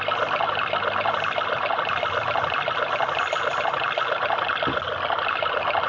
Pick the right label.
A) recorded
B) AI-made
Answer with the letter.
A